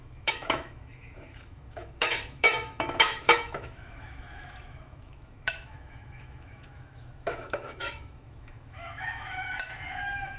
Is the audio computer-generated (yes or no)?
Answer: yes